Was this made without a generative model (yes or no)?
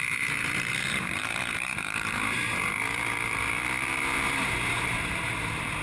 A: no